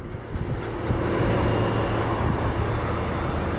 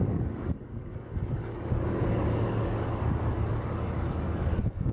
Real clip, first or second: first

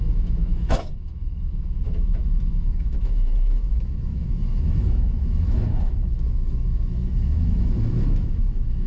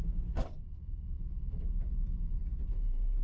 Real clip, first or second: second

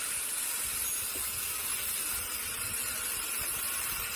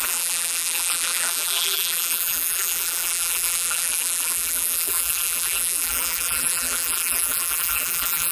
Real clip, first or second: first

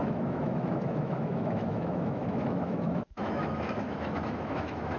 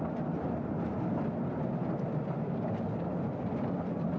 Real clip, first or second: second